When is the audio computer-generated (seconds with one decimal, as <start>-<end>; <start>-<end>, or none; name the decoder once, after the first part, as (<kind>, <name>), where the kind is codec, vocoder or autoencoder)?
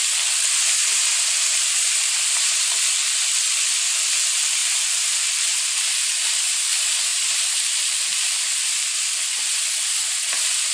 0.9-2.6 (vocoder, BigVGAN v2); 4.6-5.2; 7.1-8.4